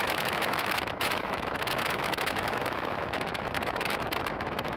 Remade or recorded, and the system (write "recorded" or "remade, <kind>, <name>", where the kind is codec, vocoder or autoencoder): remade, autoencoder, DAC-VAE